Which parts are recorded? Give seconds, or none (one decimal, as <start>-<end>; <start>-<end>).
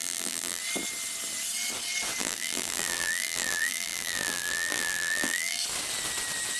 0.6-2.2; 5.6-6.6